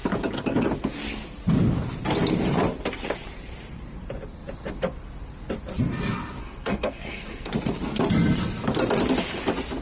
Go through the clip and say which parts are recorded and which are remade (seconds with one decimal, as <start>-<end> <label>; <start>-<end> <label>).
0.0-6.4 recorded; 6.4-7.5 remade; 7.5-9.8 recorded